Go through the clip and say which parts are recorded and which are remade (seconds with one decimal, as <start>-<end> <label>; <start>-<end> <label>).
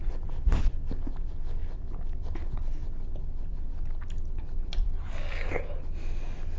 0.0-6.6 recorded